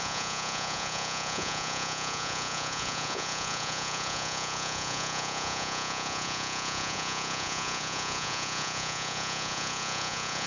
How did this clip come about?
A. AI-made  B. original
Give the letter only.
A